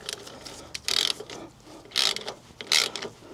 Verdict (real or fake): real